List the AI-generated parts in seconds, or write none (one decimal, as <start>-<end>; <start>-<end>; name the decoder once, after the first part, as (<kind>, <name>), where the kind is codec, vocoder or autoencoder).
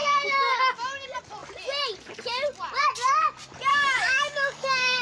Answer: 0.0-0.6 (codec, DAC); 3.7-5.0